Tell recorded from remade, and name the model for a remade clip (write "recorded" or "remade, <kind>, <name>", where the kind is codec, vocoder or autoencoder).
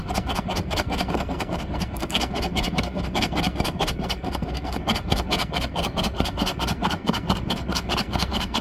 remade, codec, SNAC